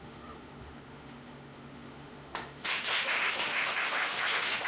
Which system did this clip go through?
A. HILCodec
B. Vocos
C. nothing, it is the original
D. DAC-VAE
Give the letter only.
D